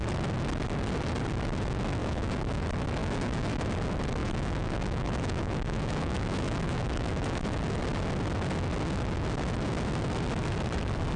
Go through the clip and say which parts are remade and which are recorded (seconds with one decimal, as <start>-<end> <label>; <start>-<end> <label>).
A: 0.0-2.0 recorded; 2.0-2.6 remade; 2.6-3.0 recorded; 3.0-3.6 remade; 3.6-4.2 recorded; 4.2-7.8 remade; 7.8-11.2 recorded